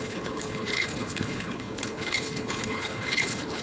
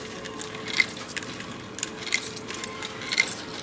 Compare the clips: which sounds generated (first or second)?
first